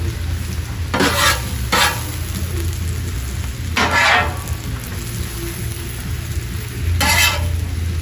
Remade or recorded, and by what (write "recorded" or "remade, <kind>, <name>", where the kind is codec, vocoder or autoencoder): recorded